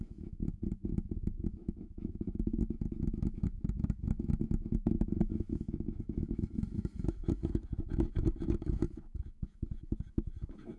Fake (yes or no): yes